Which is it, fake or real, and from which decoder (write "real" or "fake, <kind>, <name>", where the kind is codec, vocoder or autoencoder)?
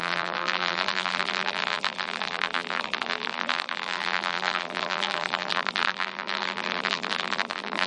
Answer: fake, vocoder, BigVGAN v2